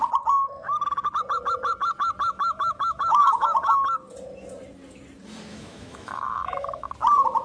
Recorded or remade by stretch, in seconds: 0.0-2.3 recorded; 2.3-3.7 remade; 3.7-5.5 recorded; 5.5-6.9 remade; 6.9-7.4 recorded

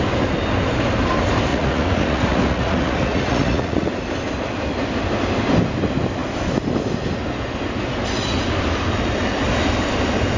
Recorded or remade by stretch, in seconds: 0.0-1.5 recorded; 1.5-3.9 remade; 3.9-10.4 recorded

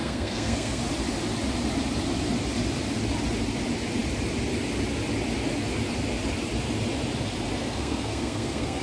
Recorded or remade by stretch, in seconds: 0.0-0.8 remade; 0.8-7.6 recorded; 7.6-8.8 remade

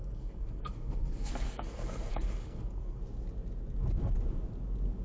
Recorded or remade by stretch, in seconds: 0.0-3.0 remade; 3.0-5.0 recorded

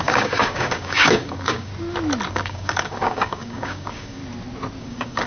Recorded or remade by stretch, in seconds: 0.0-1.7 remade; 1.7-2.3 recorded; 2.3-4.2 remade; 4.2-4.8 recorded; 4.8-5.3 remade

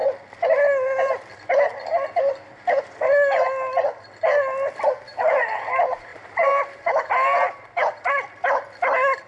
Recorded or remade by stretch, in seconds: 0.0-5.1 recorded; 5.1-5.6 remade; 5.6-6.1 recorded; 6.1-8.1 remade; 8.1-9.3 recorded

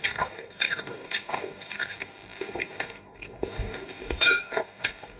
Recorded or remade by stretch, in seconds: 0.0-5.2 remade

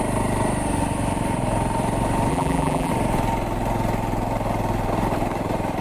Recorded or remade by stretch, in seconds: 0.0-2.3 recorded; 2.3-2.9 remade; 2.9-5.8 recorded